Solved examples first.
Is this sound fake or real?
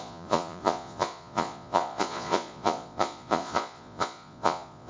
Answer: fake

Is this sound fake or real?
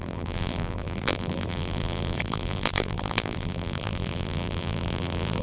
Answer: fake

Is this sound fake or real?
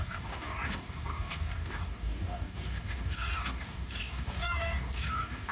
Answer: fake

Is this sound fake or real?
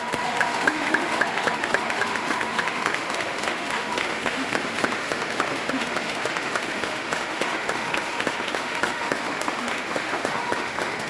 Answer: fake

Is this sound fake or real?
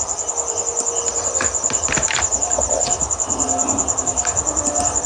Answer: real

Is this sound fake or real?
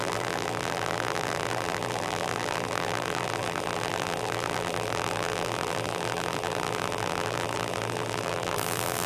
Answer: fake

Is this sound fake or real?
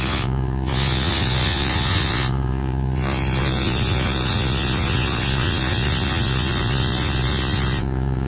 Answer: fake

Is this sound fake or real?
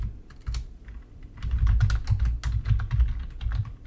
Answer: real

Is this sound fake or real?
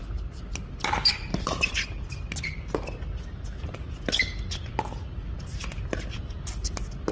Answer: real